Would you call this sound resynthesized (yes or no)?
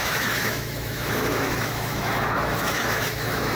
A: yes